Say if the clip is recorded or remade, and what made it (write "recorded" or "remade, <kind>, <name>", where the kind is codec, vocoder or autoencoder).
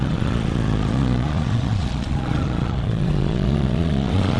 remade, vocoder, Vocos